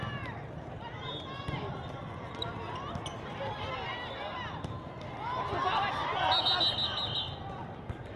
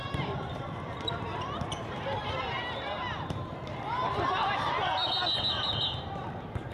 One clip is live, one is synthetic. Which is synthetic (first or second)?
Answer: second